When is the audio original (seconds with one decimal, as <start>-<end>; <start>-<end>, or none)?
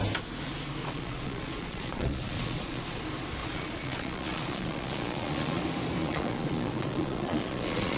0.0-0.8; 3.0-3.4; 5.6-6.0